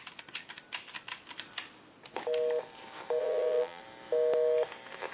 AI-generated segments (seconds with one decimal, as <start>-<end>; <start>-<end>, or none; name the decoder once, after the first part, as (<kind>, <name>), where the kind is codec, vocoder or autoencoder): 3.2-3.8 (vocoder, BigVGAN v2)